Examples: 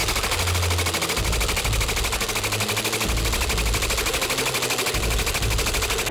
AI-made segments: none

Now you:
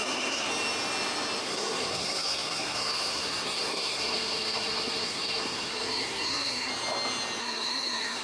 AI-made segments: 0.0-0.5; 1.4-6.7; 7.4-8.2

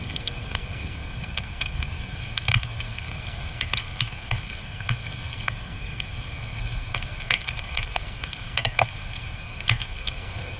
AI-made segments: 0.0-10.6

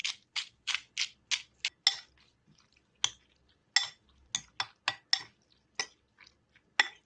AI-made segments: none

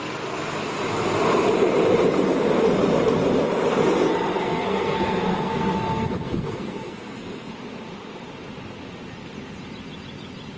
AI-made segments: 4.3-7.5